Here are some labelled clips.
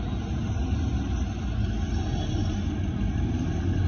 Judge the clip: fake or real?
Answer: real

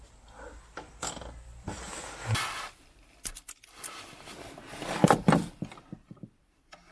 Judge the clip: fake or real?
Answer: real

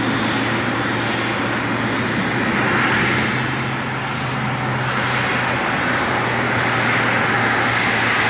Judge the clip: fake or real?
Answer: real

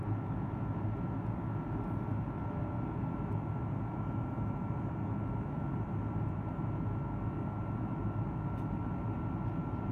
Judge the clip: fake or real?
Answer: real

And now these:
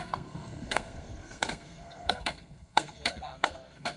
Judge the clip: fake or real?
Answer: fake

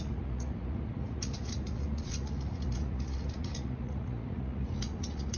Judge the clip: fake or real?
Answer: fake